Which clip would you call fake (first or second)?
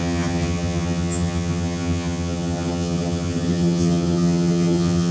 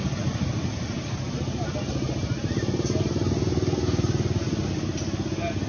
first